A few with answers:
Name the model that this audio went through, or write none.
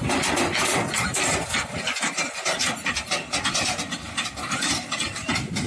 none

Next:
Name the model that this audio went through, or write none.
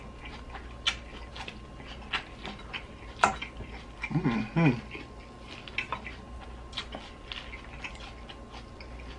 none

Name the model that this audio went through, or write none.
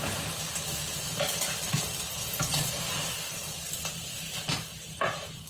none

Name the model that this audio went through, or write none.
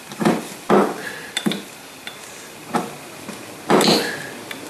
none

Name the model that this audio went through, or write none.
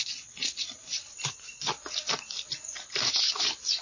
none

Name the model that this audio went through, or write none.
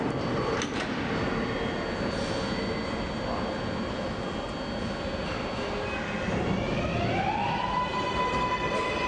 none